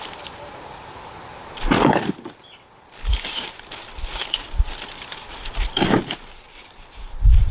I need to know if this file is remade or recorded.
recorded